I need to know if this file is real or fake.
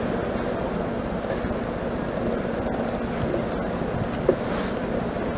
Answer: real